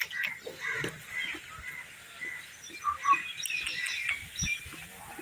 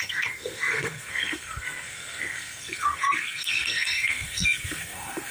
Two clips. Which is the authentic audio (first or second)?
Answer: first